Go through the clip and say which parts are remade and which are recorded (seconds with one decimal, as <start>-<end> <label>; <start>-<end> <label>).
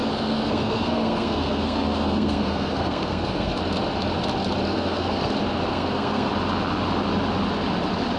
0.0-3.6 remade; 3.6-4.7 recorded; 4.7-5.3 remade; 5.3-5.7 recorded; 5.7-6.3 remade; 6.3-8.2 recorded